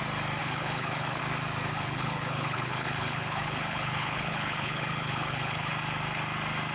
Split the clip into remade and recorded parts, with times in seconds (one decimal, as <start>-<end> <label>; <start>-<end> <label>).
0.0-0.4 recorded; 0.4-1.2 remade; 1.2-1.7 recorded; 1.7-5.7 remade; 5.7-6.7 recorded